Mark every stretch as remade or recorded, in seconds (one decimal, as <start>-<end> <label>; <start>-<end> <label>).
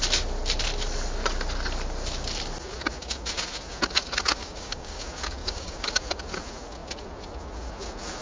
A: 0.0-4.4 recorded; 4.4-5.0 remade; 5.0-5.4 recorded; 5.4-5.9 remade; 5.9-8.2 recorded